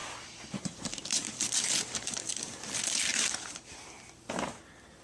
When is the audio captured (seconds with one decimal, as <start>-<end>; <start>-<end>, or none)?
2.3-3.1; 4.0-5.0